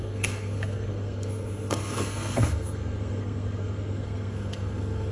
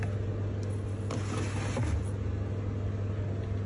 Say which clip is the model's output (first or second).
first